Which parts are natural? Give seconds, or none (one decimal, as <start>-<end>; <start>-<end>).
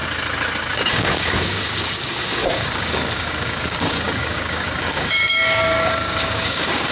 0.0-0.7